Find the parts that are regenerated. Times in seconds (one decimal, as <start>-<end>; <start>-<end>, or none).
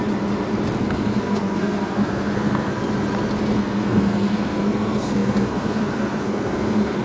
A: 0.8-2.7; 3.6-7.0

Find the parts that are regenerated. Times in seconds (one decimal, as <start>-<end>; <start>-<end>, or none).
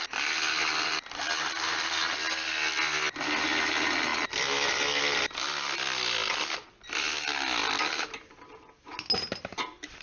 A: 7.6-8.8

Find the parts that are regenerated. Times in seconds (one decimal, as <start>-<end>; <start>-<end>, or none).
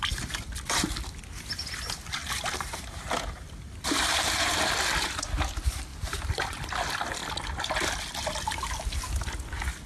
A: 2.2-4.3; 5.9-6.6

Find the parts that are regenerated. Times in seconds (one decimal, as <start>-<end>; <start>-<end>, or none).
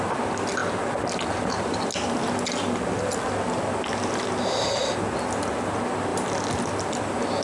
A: none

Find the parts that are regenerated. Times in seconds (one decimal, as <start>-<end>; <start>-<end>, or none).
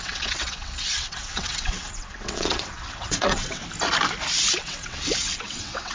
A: 0.0-3.6; 4.5-5.9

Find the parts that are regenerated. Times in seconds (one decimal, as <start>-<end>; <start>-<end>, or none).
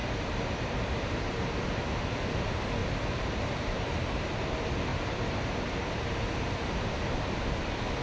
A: 0.0-1.6; 2.8-4.5; 4.9-6.1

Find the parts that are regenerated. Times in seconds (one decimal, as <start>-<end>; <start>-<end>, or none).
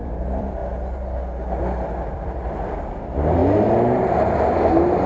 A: 0.0-0.6; 1.6-3.4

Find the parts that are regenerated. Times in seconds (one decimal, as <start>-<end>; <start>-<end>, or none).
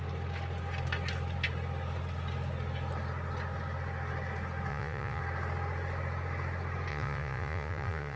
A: 4.7-5.2; 6.9-8.2